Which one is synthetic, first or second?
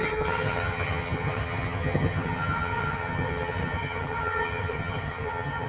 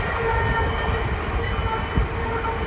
first